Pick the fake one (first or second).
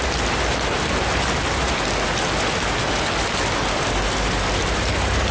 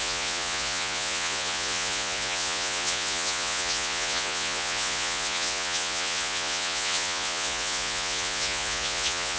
second